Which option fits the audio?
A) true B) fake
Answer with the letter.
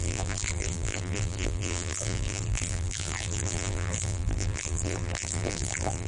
B